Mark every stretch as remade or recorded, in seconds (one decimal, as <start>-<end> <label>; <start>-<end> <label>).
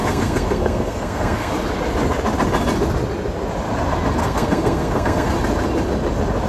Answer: 0.0-1.5 remade; 1.5-4.2 recorded; 4.2-5.3 remade; 5.3-6.5 recorded